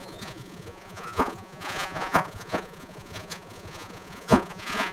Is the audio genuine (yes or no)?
no